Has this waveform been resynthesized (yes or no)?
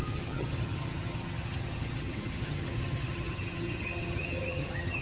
yes